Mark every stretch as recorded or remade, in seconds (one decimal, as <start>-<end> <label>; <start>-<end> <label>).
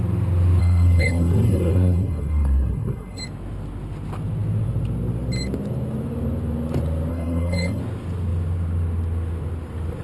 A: 0.0-0.6 recorded; 0.6-3.2 remade; 3.2-7.1 recorded; 7.1-7.8 remade; 7.8-10.0 recorded